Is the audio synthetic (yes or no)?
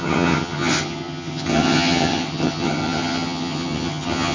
yes